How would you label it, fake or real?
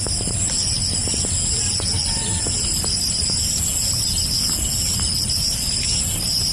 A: real